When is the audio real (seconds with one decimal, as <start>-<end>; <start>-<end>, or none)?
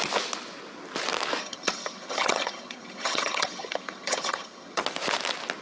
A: 0.0-1.4; 4.8-5.6